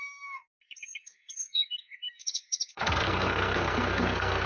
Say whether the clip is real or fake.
fake